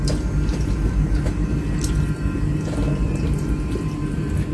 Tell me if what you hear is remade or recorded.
remade